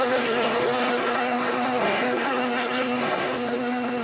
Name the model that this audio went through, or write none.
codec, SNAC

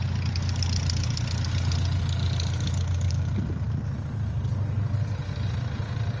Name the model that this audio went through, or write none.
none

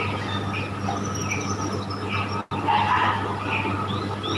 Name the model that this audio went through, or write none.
none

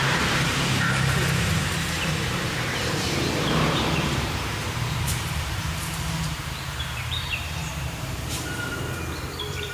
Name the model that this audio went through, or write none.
vocoder, BigVGAN v2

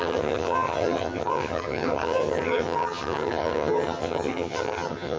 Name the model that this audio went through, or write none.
vocoder, HiFi-GAN